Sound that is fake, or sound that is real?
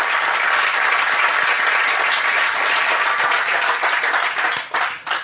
real